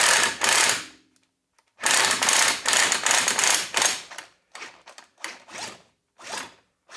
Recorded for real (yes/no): no